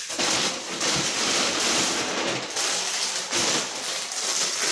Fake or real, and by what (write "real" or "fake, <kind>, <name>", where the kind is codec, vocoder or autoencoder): real